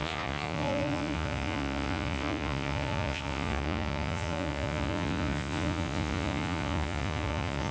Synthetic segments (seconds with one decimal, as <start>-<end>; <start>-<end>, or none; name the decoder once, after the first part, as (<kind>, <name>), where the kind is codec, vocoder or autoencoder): 0.0-7.7 (vocoder, Vocos)